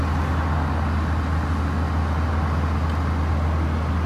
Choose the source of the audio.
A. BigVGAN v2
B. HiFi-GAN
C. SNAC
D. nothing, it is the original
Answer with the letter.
D